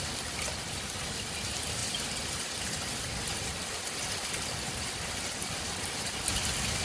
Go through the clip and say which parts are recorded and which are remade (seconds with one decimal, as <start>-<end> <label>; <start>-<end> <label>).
0.0-6.8 recorded